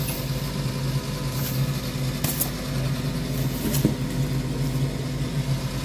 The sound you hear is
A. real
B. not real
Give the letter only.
A